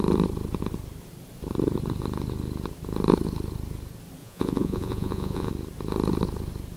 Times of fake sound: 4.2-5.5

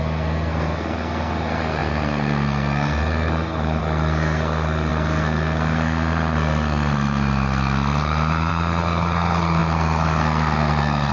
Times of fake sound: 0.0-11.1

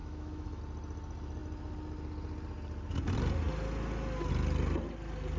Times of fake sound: 0.0-0.6